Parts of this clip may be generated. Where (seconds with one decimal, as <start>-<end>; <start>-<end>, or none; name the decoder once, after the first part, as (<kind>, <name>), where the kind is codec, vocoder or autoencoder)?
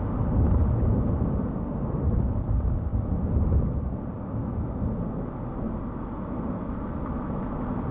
none